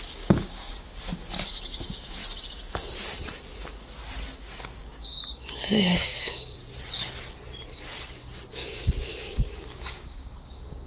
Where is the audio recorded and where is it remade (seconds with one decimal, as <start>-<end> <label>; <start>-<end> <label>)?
0.0-2.2 remade; 2.2-4.4 recorded; 4.4-6.6 remade; 6.6-8.5 recorded; 8.5-10.9 remade